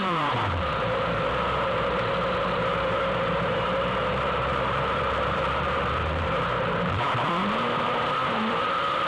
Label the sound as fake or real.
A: fake